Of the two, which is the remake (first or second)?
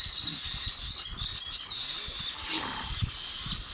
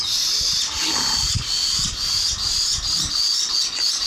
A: second